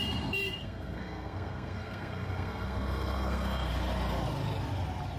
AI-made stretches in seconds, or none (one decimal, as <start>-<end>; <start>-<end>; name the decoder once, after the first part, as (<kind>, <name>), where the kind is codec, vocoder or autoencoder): 0.6-3.7 (codec, SNAC)